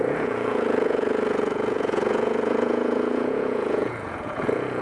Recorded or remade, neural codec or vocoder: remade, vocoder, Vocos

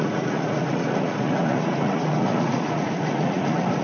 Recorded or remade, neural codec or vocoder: remade, vocoder, Vocos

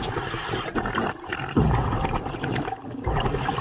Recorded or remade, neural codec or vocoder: recorded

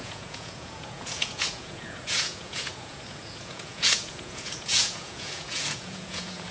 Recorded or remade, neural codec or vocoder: remade, vocoder, Vocos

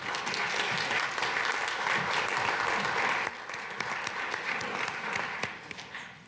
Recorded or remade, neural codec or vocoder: recorded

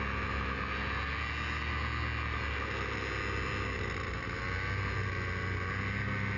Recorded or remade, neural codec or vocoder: recorded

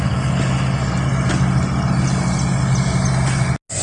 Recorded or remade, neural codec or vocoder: recorded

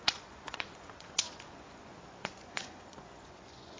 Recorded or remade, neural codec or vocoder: remade, vocoder, Vocos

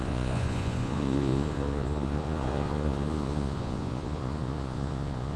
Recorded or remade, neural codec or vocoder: remade, vocoder, Vocos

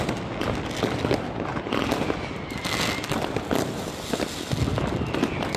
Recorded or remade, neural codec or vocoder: recorded